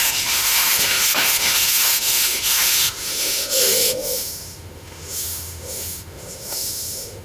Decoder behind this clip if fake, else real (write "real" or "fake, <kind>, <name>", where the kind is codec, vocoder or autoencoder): fake, autoencoder, DAC-VAE